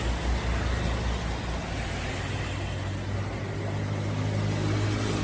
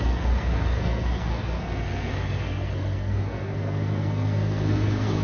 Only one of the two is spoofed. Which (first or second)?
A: second